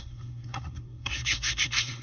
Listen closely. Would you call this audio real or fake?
fake